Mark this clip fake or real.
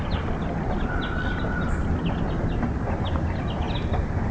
real